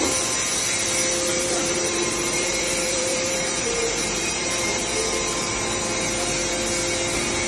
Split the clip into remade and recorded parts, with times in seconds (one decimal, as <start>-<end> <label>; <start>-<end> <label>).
0.0-1.3 recorded; 1.3-5.8 remade; 5.8-7.5 recorded